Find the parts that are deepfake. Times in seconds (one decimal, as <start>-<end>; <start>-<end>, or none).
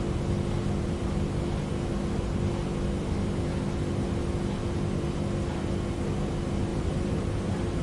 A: 6.7-7.8